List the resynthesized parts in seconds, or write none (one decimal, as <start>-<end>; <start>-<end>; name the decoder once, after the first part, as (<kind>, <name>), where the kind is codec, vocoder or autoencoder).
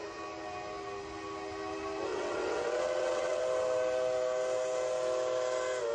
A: 2.1-3.4 (vocoder, WaveNeXt)